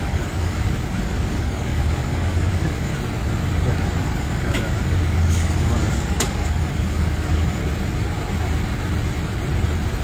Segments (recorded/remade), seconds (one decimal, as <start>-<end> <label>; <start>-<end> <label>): 0.0-2.9 remade; 2.9-3.7 recorded; 3.7-7.6 remade; 7.6-10.0 recorded